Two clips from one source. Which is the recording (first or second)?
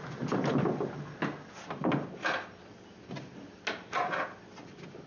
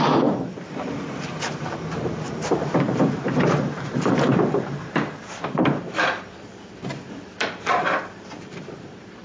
first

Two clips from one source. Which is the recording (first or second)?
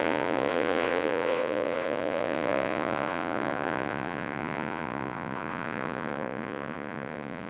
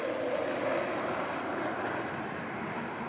second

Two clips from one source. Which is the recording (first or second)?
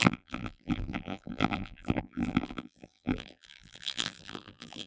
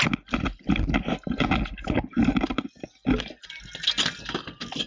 second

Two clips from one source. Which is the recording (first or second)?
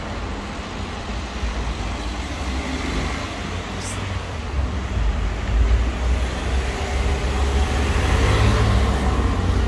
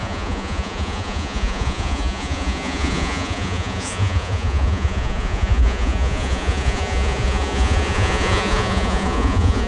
first